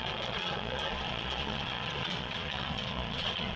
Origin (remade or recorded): remade